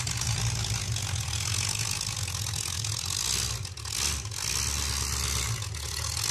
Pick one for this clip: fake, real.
real